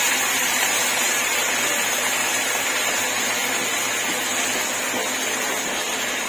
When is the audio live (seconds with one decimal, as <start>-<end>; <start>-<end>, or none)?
0.0-0.4; 1.5-6.3

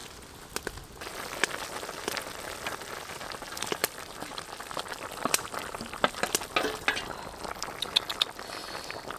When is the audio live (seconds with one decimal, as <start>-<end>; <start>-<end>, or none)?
0.0-3.8; 6.2-9.2